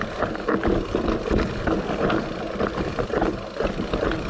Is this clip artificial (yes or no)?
no